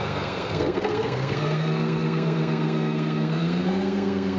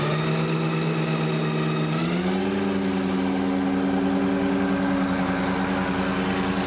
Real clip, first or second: second